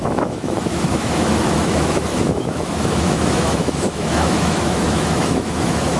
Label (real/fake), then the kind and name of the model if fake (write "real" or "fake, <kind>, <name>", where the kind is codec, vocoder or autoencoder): fake, autoencoder, DAC-VAE